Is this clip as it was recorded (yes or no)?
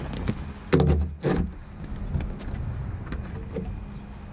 yes